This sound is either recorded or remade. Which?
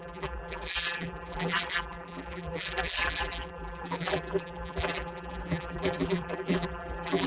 remade